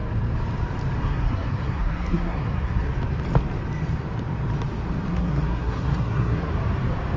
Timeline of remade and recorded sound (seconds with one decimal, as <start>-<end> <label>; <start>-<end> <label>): 0.0-1.0 recorded; 1.0-2.9 remade; 2.9-5.1 recorded; 5.1-6.5 remade; 6.5-7.2 recorded